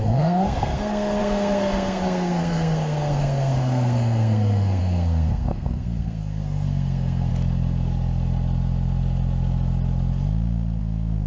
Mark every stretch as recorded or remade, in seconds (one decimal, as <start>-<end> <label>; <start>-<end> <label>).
0.0-7.3 remade; 7.3-10.8 recorded; 10.8-11.3 remade